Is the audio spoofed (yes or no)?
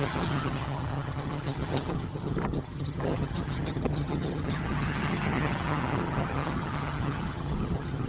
yes